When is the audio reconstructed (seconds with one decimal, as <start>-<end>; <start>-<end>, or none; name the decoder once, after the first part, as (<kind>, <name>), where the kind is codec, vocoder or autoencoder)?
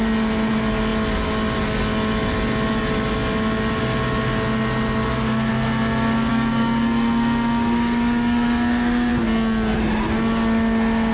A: 6.3-9.1 (codec, DAC)